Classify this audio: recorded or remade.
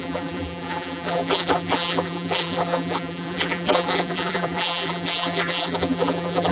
remade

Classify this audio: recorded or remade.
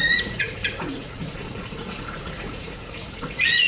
remade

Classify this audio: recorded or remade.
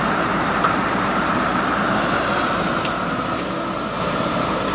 remade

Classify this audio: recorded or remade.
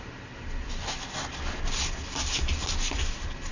recorded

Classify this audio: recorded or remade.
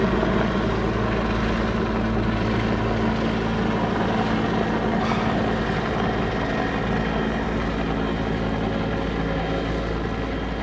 recorded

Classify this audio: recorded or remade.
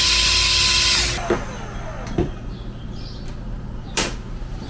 recorded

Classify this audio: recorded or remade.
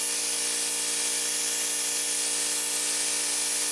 recorded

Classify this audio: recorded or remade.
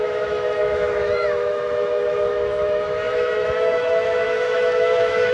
remade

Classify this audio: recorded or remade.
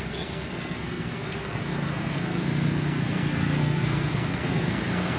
remade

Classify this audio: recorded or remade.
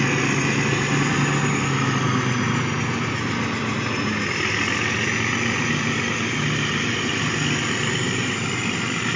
recorded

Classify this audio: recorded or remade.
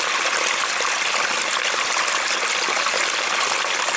recorded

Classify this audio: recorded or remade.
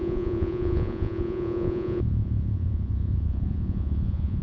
remade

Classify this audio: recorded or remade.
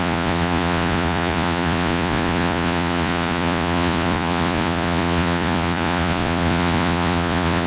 remade